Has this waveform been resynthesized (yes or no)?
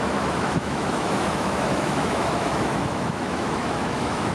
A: yes